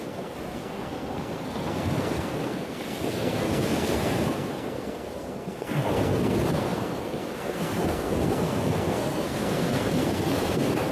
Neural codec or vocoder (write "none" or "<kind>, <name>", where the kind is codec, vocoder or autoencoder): codec, SNAC